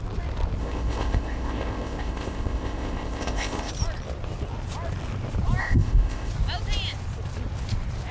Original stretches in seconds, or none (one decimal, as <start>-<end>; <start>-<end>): 0.0-0.6; 3.7-5.6; 6.3-8.1